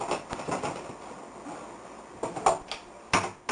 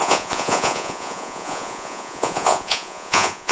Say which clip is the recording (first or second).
first